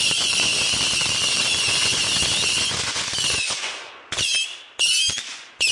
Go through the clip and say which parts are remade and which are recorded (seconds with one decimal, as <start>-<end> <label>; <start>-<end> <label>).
0.0-0.5 remade; 0.5-1.3 recorded; 1.3-2.0 remade; 2.0-2.5 recorded; 2.5-4.3 remade; 4.3-5.3 recorded; 5.3-5.7 remade